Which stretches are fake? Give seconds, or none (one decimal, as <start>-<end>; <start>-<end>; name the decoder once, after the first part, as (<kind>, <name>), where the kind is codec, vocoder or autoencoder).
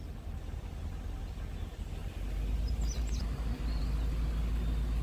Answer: none